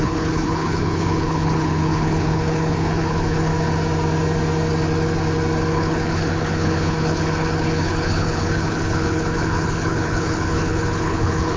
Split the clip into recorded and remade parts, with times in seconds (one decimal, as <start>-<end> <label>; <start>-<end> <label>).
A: 0.0-3.5 remade; 3.5-5.7 recorded; 5.7-11.6 remade